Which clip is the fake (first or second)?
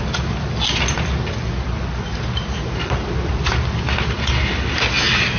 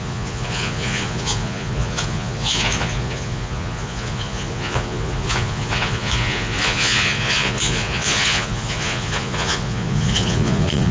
second